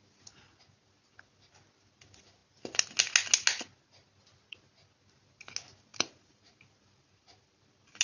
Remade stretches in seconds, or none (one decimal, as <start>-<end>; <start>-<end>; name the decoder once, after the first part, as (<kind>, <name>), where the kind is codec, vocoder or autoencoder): 5.9-7.6 (vocoder, BigVGAN v2)